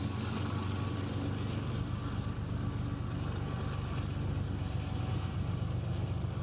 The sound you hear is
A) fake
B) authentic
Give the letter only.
B